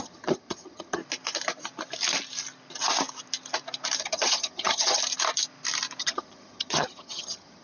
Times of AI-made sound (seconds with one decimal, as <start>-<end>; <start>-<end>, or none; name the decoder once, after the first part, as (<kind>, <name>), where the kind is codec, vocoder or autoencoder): 0.0-1.0 (vocoder, HiFi-GAN); 4.0-5.0; 6.0-7.6